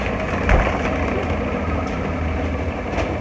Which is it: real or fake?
real